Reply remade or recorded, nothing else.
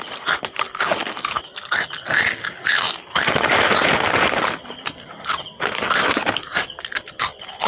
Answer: recorded